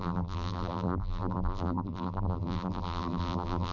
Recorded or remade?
remade